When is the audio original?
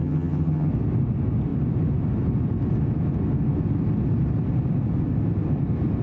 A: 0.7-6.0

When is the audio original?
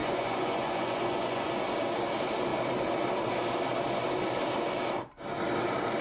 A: 1.5-6.0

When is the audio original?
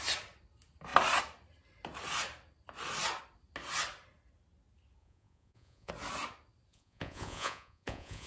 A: 0.0-5.0; 5.9-6.7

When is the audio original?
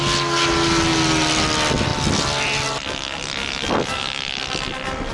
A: 0.0-5.1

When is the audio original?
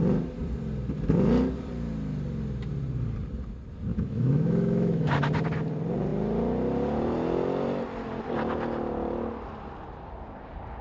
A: 0.0-3.9; 5.1-10.8